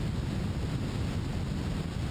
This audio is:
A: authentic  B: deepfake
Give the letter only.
A